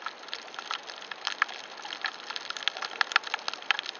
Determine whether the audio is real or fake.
real